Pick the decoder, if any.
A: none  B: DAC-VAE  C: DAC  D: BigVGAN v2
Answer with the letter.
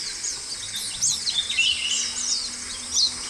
A